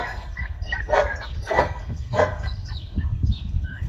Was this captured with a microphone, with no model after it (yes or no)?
no